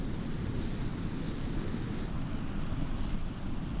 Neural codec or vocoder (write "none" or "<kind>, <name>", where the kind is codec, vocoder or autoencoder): none